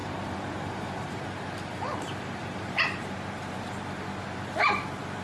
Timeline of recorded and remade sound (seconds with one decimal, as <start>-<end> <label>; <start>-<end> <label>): 0.0-3.1 remade; 3.1-5.2 recorded